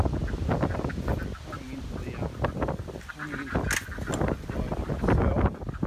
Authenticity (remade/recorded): recorded